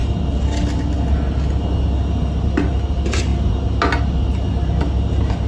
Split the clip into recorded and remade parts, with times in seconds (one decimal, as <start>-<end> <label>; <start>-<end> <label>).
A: 0.0-5.5 recorded